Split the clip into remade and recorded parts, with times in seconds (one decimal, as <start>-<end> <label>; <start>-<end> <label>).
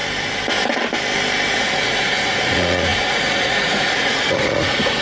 0.0-1.6 recorded; 1.6-5.0 remade